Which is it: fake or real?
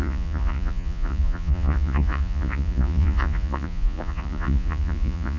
fake